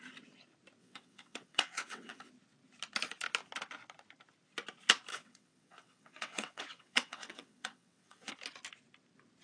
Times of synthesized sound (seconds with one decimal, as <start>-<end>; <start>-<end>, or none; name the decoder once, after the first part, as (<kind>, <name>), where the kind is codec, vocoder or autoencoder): 0.8-2.3 (vocoder, WaveNeXt); 5.1-8.3